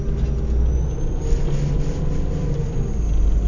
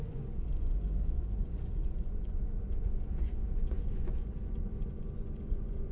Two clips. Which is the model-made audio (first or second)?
second